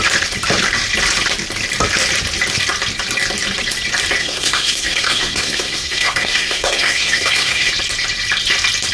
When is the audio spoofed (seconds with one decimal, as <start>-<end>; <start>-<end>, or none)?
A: 4.2-7.7